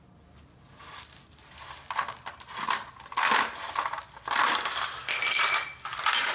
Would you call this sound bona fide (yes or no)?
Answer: no